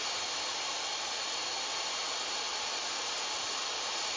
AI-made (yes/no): yes